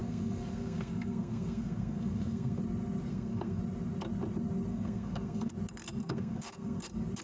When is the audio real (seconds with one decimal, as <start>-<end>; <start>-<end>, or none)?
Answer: 2.6-3.1; 3.6-4.7; 5.5-6.0; 6.8-7.2